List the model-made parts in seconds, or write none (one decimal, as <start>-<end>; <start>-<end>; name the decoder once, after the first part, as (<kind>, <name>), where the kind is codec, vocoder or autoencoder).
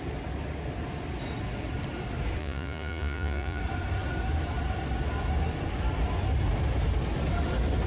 2.4-3.6 (vocoder, Vocos)